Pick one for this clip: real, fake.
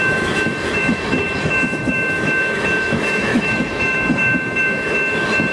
fake